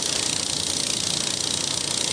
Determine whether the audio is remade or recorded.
recorded